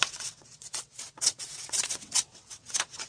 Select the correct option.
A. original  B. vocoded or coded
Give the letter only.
B